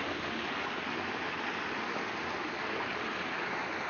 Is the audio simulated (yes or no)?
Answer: no